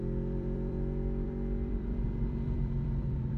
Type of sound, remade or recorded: remade